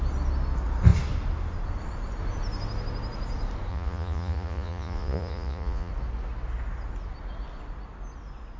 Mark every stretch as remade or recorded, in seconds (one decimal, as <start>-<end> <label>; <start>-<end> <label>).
0.0-3.7 recorded; 3.7-5.9 remade; 5.9-8.6 recorded